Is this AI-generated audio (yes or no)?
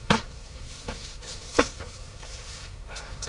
yes